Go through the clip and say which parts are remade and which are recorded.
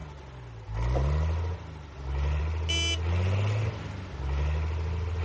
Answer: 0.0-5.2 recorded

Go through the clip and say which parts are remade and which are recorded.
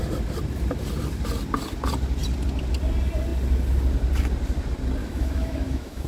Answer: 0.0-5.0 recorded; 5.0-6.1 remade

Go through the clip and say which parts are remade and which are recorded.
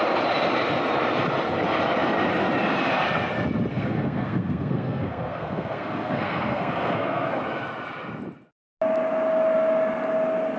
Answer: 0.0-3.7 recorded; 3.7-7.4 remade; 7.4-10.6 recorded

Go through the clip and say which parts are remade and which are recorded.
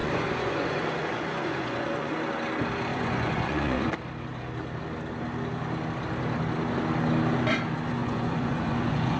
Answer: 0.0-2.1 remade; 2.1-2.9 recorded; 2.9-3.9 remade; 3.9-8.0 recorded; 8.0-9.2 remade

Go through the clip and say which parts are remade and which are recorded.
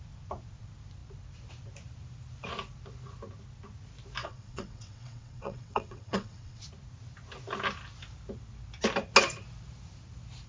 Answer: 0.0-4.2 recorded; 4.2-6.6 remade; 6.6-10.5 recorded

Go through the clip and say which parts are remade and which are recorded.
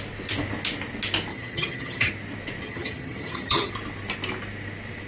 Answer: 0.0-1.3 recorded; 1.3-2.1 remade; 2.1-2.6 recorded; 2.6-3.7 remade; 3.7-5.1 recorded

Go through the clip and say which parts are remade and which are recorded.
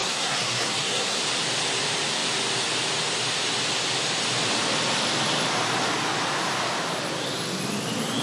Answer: 0.0-1.2 remade; 1.2-8.2 recorded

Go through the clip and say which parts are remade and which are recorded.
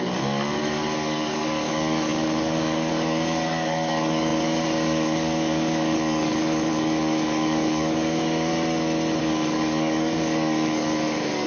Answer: 0.0-8.5 remade; 8.5-9.2 recorded; 9.2-11.5 remade